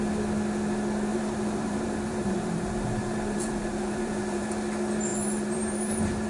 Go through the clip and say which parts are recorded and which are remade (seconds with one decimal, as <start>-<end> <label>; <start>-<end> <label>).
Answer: 0.0-1.1 recorded; 1.1-4.5 remade; 4.5-5.1 recorded; 5.1-6.3 remade